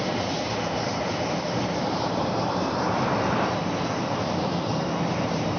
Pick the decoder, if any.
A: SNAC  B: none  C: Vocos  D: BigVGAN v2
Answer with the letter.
D